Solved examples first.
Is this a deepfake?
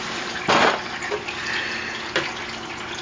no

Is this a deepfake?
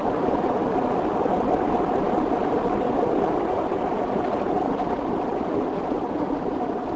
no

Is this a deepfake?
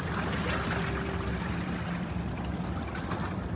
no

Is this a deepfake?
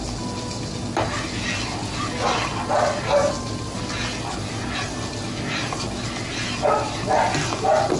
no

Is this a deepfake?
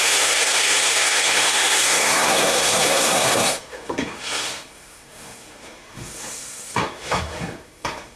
yes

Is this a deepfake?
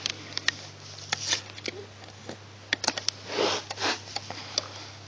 no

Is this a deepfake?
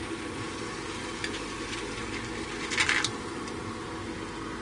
no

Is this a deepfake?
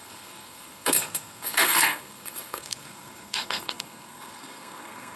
yes